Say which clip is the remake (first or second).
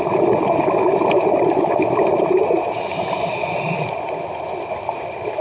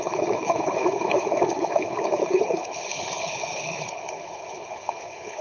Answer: second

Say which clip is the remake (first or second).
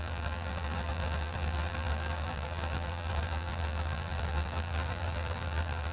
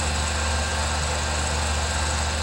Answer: first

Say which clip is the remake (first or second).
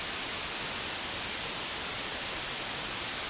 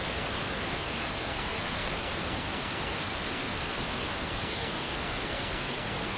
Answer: second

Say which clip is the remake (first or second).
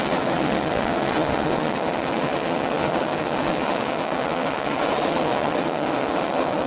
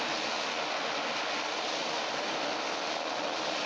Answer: first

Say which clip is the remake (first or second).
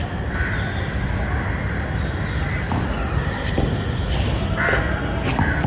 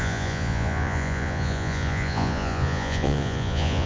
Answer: second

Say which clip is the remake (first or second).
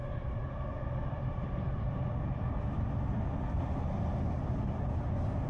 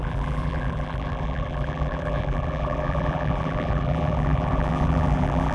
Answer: second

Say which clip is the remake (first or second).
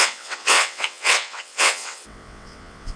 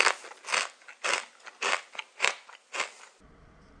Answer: first